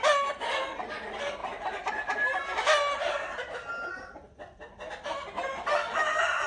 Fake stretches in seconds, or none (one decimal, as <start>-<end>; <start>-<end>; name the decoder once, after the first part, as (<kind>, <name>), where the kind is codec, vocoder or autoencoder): none

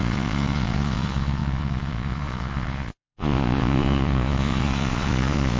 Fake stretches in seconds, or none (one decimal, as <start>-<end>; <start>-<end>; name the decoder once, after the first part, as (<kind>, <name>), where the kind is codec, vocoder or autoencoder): 0.0-5.6 (vocoder, Vocos)

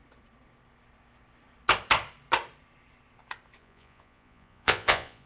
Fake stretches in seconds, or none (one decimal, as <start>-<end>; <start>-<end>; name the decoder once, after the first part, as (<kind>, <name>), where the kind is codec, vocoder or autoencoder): 3.6-5.3 (vocoder, Vocos)

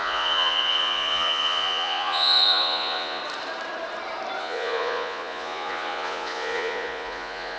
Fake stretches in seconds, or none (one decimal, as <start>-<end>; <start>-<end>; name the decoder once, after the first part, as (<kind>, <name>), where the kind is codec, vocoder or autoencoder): 0.0-3.2 (vocoder, Vocos); 4.4-7.6

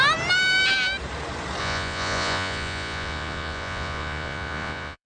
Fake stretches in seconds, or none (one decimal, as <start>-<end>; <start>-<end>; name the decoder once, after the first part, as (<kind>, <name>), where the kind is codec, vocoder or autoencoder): 1.6-5.1 (vocoder, Vocos)

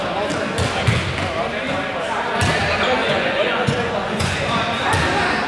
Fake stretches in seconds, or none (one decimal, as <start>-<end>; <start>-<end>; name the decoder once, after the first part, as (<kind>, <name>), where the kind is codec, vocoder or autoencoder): 3.0-4.6 (vocoder, Vocos)

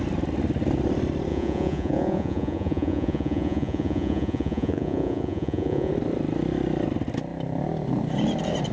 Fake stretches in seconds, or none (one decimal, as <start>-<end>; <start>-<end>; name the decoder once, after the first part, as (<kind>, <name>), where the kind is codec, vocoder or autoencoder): 1.3-5.9 (vocoder, Vocos)

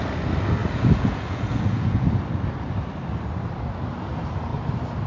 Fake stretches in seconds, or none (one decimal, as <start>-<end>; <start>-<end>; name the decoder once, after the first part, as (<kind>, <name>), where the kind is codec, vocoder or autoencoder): 0.6-2.2 (vocoder, Vocos)